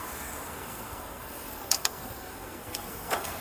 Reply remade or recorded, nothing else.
remade